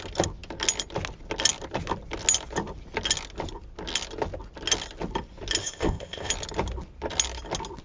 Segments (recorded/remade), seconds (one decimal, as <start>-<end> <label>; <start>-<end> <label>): 0.0-5.6 recorded; 5.6-6.3 remade; 6.3-7.8 recorded